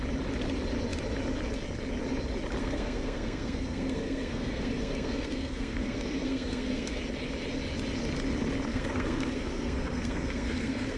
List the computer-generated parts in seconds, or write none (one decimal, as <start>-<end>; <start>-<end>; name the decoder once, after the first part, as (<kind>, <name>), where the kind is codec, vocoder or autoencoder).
2.6-7.0 (codec, SNAC); 8.7-11.0